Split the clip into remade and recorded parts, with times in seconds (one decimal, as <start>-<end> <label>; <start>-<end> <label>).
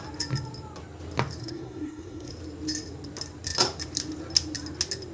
0.0-1.4 recorded; 1.4-2.3 remade; 2.3-5.1 recorded